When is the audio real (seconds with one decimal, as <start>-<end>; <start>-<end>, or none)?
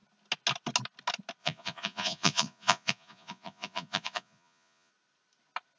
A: 0.0-1.4; 4.9-5.8